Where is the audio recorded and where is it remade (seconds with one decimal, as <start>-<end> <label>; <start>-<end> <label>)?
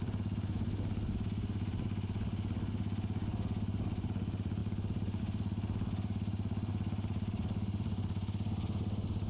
0.0-9.3 recorded